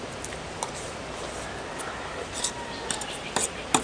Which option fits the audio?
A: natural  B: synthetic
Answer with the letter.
A